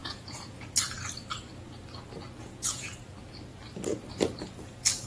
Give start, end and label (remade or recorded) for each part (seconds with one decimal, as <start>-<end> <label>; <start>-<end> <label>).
0.0-0.7 remade; 0.7-2.4 recorded; 2.4-3.0 remade; 3.0-5.1 recorded